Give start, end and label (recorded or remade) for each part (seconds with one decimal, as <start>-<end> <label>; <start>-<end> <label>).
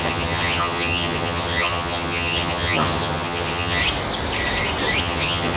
0.0-3.8 remade; 3.8-5.0 recorded; 5.0-5.6 remade